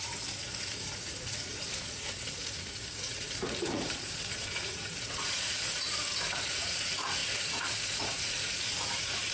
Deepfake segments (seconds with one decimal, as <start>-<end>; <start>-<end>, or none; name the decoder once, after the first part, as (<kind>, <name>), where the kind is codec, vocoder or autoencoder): 0.0-9.3 (vocoder, Vocos)